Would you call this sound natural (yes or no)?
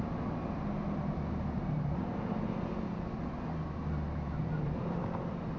yes